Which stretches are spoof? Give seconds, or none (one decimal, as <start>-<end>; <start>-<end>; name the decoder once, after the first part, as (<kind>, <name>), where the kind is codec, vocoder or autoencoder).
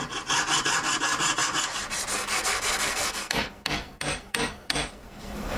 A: 2.1-5.6 (codec, SNAC)